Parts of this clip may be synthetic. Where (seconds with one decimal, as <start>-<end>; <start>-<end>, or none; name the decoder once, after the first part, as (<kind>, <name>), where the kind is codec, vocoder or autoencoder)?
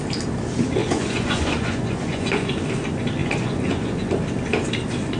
0.8-2.5 (vocoder, Vocos); 3.2-4.1